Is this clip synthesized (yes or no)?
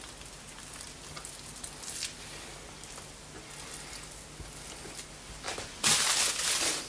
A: no